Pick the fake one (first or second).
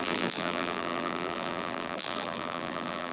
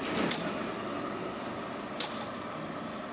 first